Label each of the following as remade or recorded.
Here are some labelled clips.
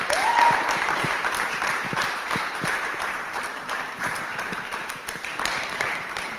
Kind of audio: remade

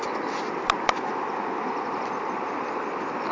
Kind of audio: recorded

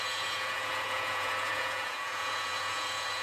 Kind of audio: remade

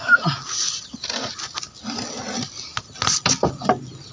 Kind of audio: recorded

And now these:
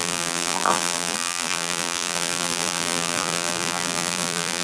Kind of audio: remade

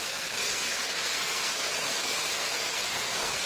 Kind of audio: remade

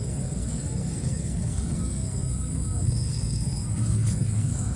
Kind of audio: remade